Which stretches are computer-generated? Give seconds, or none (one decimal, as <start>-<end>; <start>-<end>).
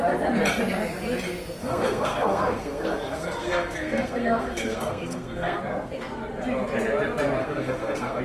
1.6-5.6; 7.4-8.2